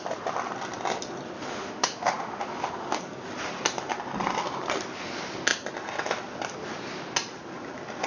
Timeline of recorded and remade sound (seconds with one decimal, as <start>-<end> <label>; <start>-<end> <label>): 0.0-1.5 recorded; 1.5-3.0 remade; 3.0-8.1 recorded